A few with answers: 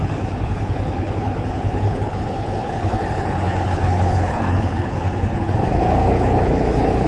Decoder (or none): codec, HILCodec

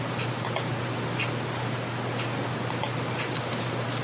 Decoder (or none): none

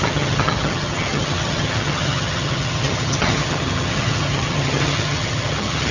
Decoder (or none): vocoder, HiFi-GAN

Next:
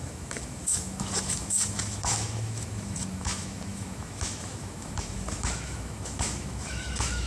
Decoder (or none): autoencoder, DAC-VAE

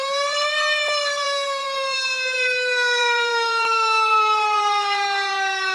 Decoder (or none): vocoder, BigVGAN v2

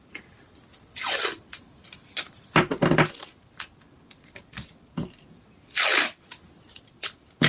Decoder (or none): none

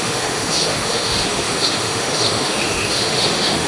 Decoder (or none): autoencoder, DAC-VAE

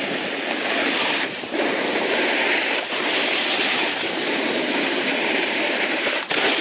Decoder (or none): vocoder, BigVGAN v2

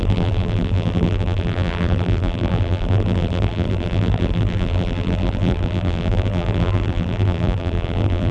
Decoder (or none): vocoder, BigVGAN v2